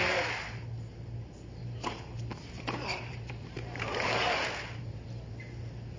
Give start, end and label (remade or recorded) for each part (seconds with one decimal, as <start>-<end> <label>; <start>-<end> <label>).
0.0-1.6 recorded; 1.6-4.5 remade; 4.5-6.0 recorded